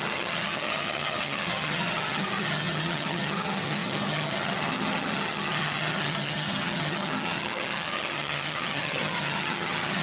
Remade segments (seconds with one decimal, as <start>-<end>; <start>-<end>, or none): 0.0-10.0